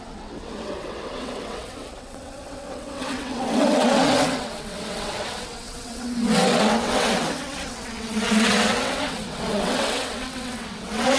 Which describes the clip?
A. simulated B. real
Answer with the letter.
A